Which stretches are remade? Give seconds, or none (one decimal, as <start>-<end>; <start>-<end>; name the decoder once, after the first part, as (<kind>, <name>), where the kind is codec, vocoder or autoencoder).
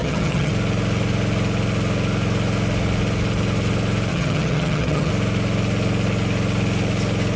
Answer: 0.0-0.5 (vocoder, HiFi-GAN); 4.1-5.1